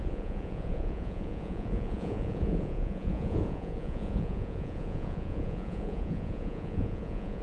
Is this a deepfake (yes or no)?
yes